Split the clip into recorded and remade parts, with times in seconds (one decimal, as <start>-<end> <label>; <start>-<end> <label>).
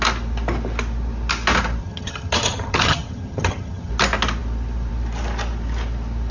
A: 0.0-1.8 recorded; 1.8-3.9 remade; 3.9-6.3 recorded